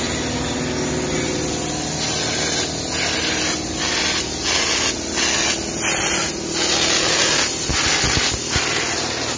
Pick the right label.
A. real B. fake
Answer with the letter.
A